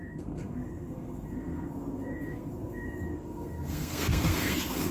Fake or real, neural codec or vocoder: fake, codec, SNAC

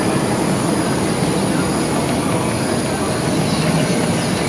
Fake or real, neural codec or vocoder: real